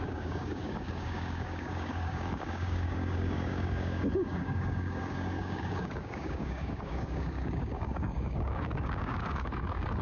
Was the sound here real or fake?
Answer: fake